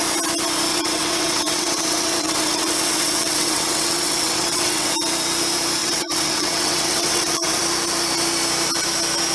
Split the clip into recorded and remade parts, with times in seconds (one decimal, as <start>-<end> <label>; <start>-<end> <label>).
0.0-0.7 recorded; 0.7-4.9 remade; 4.9-5.8 recorded; 5.8-7.6 remade; 7.6-9.3 recorded